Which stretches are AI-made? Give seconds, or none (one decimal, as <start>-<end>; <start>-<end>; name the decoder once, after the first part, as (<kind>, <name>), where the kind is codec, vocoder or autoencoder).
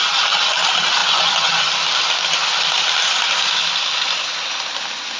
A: 1.0-1.7 (vocoder, Vocos)